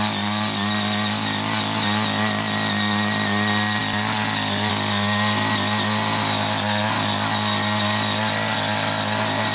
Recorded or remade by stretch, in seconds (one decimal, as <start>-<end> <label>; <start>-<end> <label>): 0.0-9.5 recorded